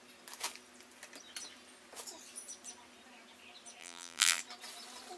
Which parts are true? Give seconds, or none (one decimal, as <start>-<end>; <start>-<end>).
0.0-3.8; 4.4-5.2